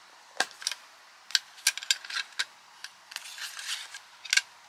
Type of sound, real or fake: real